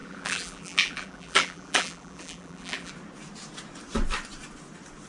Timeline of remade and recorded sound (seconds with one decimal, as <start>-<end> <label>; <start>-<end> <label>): 0.0-2.9 remade; 2.9-5.1 recorded